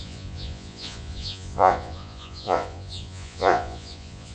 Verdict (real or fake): fake